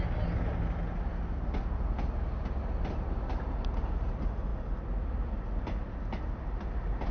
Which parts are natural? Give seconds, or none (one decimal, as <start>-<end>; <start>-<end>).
0.0-7.1